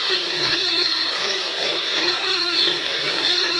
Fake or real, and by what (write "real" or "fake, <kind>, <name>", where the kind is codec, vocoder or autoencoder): fake, codec, SNAC